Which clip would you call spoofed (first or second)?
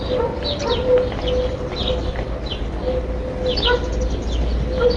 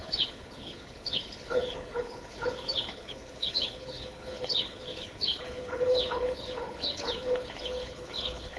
second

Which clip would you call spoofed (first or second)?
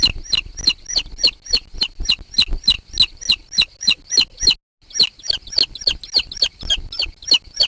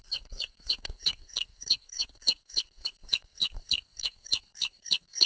second